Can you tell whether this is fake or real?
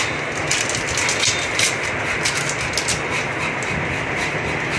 real